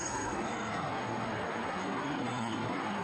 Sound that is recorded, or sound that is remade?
remade